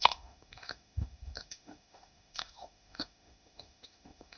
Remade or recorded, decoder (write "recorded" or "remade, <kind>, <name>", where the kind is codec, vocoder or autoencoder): remade, autoencoder, DAC-VAE